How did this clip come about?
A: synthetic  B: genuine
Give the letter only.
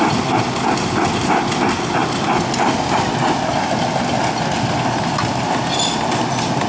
B